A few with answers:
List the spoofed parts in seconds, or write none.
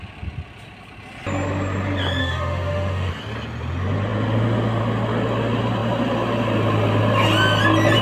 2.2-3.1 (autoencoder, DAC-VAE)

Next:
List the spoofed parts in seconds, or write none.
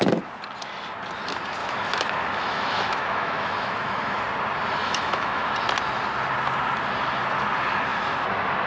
1.6-4.2 (autoencoder, DAC-VAE); 4.8-5.5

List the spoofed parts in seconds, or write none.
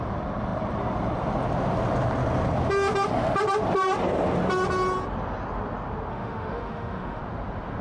6.1-7.2 (autoencoder, DAC-VAE)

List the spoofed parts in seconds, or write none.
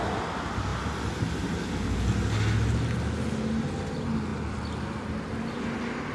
none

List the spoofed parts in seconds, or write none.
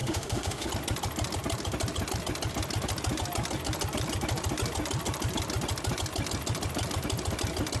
0.0-0.7 (autoencoder, DAC-VAE)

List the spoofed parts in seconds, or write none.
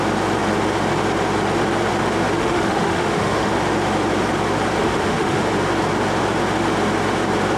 2.4-3.5 (autoencoder, DAC-VAE); 4.8-5.4